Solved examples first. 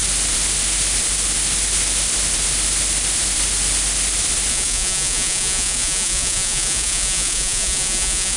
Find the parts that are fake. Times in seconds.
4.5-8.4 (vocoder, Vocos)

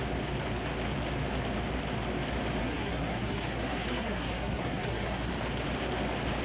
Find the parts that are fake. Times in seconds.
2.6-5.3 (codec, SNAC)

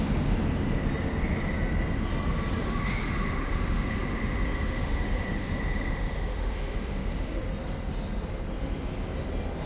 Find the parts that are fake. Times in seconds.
2.6-7.4 (autoencoder, DAC-VAE)

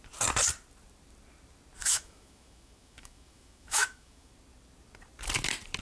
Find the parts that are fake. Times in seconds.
1.8-4.3 (autoencoder, DAC-VAE)

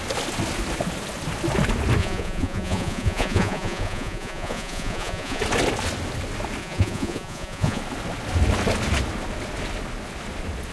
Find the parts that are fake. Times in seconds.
2.0-5.4 (vocoder, Vocos); 6.6-7.8

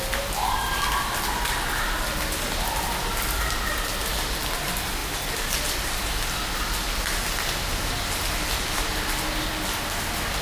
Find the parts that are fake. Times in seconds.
none

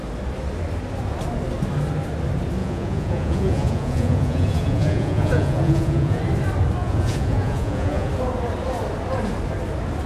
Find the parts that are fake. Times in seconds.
2.6-6.2 (vocoder, Vocos); 6.8-8.1

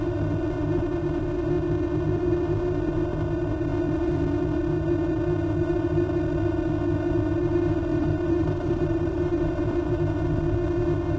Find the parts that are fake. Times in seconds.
7.9-9.5 (vocoder, BigVGAN v2)